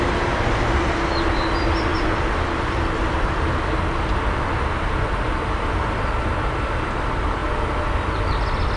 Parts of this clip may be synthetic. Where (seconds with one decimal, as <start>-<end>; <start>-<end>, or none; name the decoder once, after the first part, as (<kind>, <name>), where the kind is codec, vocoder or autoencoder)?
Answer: none